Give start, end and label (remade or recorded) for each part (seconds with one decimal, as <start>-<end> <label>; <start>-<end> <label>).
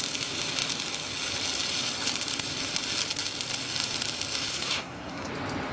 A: 0.0-4.5 recorded; 4.5-5.3 remade; 5.3-5.7 recorded